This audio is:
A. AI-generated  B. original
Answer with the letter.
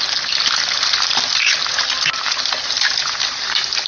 B